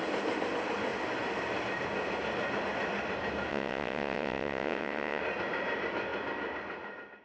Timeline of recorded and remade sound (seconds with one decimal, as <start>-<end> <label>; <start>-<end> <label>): 0.0-3.5 recorded; 3.5-5.2 remade; 5.2-7.2 recorded